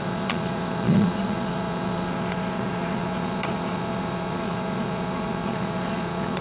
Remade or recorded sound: remade